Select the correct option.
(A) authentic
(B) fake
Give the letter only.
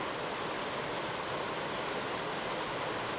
A